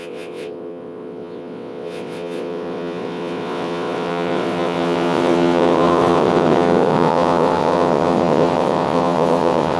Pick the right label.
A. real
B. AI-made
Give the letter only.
B